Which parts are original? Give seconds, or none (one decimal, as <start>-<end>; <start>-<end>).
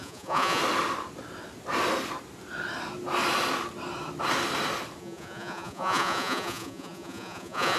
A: 0.6-5.0